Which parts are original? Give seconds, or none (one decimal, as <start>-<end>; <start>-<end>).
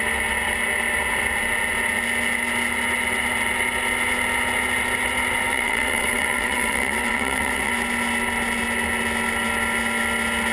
0.0-5.5; 7.7-10.5